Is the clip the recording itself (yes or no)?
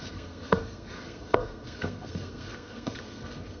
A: no